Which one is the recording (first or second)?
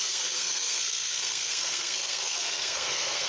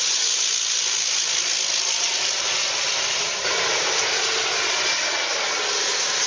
second